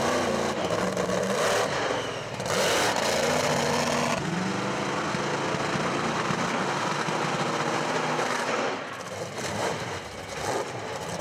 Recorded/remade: recorded